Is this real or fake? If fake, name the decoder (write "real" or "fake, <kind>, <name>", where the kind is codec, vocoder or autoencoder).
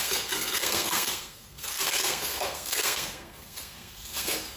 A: fake, codec, SNAC